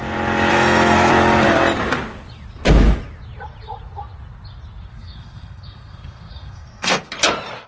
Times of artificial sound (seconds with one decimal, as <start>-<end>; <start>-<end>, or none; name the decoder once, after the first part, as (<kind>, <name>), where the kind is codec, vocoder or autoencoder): 0.5-1.1 (codec, SNAC); 4.9-7.1